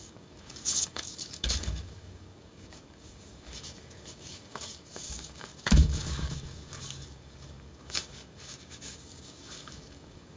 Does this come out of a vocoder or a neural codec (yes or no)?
yes